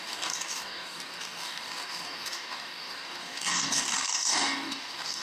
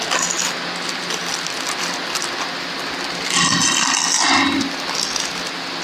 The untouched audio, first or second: second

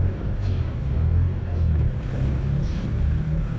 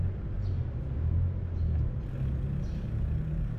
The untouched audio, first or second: second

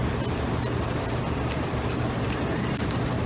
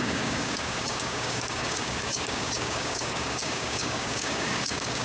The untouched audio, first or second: first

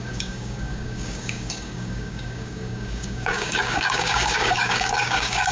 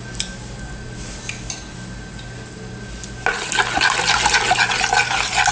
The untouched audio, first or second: second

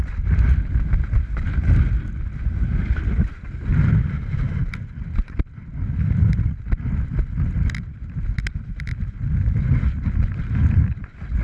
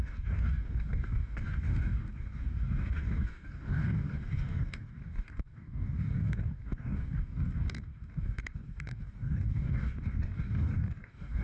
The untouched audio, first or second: first